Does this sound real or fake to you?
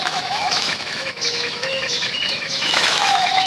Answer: fake